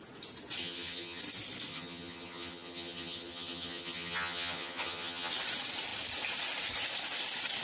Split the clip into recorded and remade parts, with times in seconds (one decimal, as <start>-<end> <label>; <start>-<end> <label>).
0.0-0.6 recorded; 0.6-1.2 remade; 1.2-1.7 recorded; 1.7-5.3 remade; 5.3-7.6 recorded